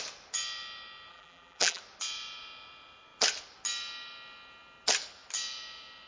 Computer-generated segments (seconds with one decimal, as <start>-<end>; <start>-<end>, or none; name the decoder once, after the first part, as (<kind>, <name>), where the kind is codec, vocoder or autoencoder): 1.1-1.8 (vocoder, BigVGAN v2)